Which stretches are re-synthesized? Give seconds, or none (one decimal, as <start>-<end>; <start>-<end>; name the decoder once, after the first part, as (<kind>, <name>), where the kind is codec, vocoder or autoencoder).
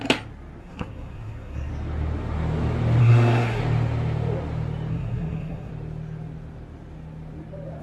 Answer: 0.6-1.7 (codec, SNAC); 3.0-3.6; 4.9-5.7